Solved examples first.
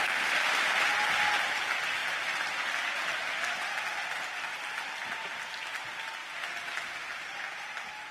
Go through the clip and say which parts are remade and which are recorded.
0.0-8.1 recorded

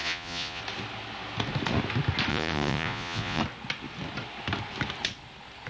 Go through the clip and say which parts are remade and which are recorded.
0.0-0.6 remade; 0.6-2.3 recorded; 2.3-3.4 remade; 3.4-5.7 recorded

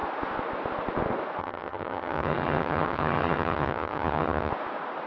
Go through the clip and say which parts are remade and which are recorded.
0.0-1.4 recorded; 1.4-4.5 remade; 4.5-5.1 recorded

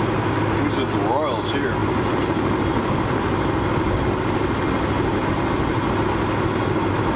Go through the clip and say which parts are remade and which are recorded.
0.0-7.2 recorded

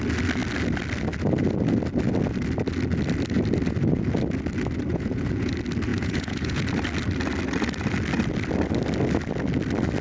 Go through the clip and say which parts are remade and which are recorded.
0.0-4.9 recorded; 4.9-5.5 remade; 5.5-5.9 recorded; 5.9-6.6 remade; 6.6-10.0 recorded

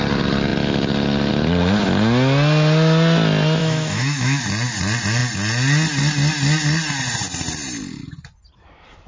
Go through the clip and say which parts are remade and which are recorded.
0.0-3.6 recorded; 3.6-4.4 remade; 4.4-9.1 recorded

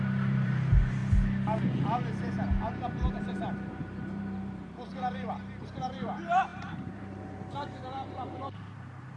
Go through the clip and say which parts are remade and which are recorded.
0.0-1.0 remade; 1.0-3.1 recorded; 3.1-9.2 remade